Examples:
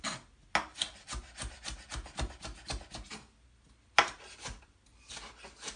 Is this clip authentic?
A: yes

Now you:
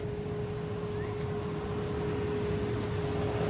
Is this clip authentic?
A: yes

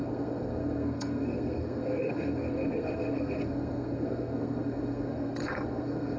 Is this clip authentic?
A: no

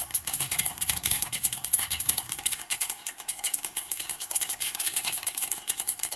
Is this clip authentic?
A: no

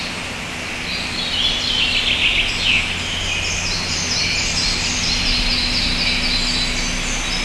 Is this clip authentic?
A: yes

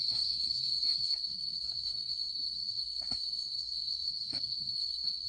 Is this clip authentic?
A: no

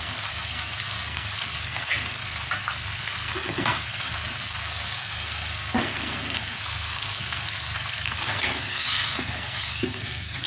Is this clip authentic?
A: no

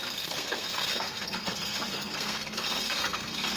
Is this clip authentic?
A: no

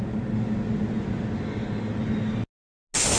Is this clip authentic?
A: yes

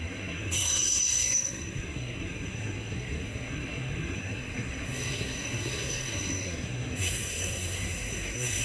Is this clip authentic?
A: no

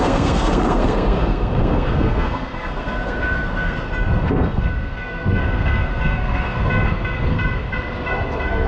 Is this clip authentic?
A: no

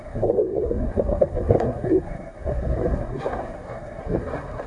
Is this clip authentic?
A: no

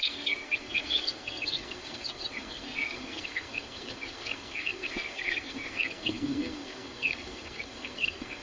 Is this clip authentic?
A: no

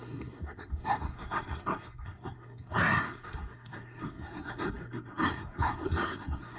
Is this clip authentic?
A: no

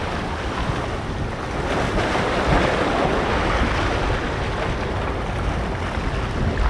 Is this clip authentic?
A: yes